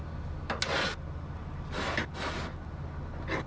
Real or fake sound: real